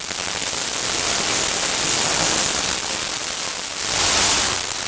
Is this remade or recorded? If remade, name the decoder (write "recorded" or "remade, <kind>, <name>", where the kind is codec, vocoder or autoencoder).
recorded